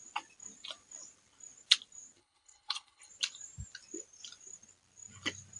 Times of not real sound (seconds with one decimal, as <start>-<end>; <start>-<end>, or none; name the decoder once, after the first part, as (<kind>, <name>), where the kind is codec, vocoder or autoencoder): 2.2-3.1 (codec, HILCodec)